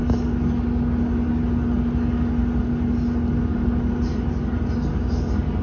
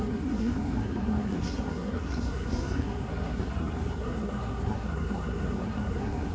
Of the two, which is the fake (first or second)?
second